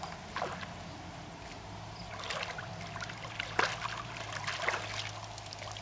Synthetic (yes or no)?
no